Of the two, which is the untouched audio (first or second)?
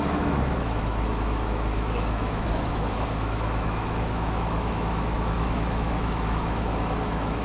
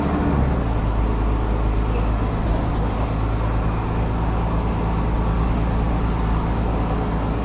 second